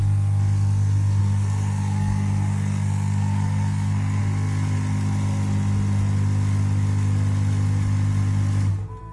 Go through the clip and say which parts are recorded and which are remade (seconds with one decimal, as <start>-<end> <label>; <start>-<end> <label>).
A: 0.0-1.2 recorded; 1.2-4.2 remade; 4.2-9.1 recorded